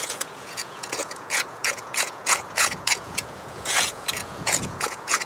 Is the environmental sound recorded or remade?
remade